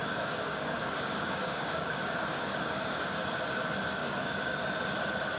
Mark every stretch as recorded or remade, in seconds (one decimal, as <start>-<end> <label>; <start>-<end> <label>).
0.0-3.2 remade; 3.2-4.0 recorded; 4.0-4.6 remade; 4.6-5.4 recorded